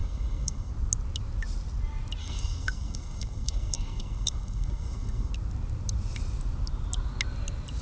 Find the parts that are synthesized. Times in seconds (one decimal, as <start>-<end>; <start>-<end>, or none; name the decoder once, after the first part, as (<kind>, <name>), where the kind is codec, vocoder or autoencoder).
0.0-0.7 (codec, SNAC); 2.2-5.3